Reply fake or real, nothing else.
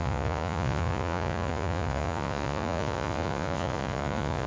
fake